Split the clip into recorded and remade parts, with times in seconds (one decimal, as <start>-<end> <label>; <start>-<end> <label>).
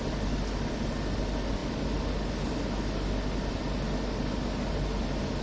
0.0-5.4 recorded